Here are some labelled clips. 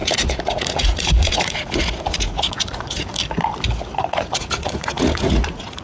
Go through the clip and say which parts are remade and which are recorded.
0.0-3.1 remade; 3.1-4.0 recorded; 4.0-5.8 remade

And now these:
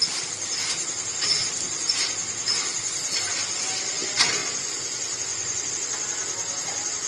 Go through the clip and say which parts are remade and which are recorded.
0.0-4.4 recorded; 4.4-5.7 remade; 5.7-7.1 recorded

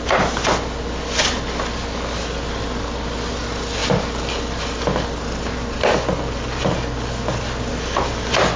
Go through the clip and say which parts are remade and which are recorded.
0.0-8.6 recorded